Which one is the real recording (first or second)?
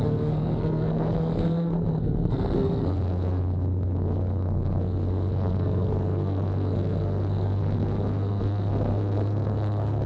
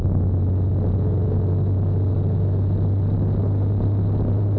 second